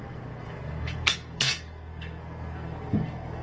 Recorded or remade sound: remade